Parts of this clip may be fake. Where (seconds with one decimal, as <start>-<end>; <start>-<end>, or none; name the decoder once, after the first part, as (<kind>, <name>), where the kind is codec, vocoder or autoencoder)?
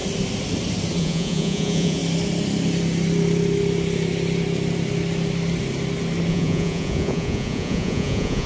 1.0-2.0 (vocoder, Vocos); 6.3-8.5